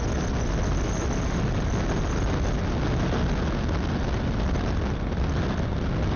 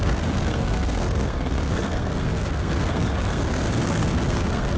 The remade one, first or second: second